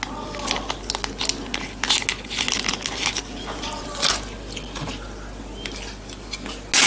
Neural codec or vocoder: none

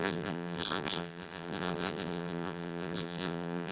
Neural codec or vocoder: vocoder, BigVGAN v2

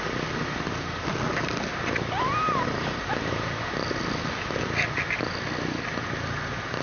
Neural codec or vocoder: none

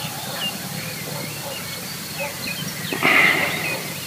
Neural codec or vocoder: none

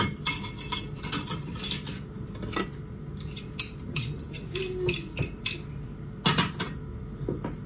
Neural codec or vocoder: none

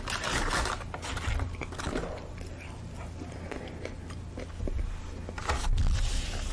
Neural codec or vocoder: none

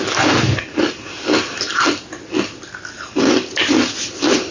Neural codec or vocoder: none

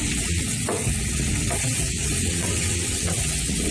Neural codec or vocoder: vocoder, WaveNeXt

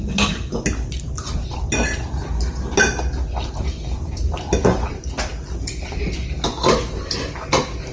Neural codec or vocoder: none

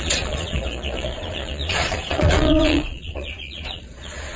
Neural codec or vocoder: vocoder, Vocos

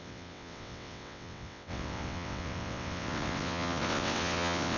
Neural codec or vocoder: vocoder, WaveNeXt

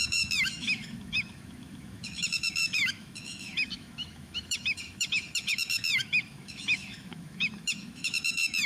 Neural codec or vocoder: autoencoder, DAC-VAE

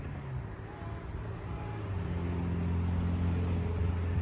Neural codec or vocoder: none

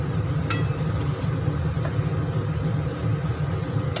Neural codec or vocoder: none